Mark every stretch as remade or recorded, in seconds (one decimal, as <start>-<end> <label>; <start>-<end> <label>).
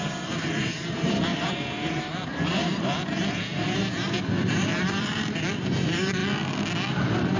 0.0-6.2 remade; 6.2-6.9 recorded; 6.9-7.4 remade